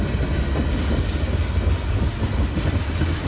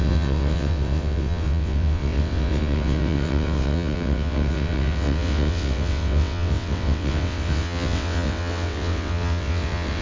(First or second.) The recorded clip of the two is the first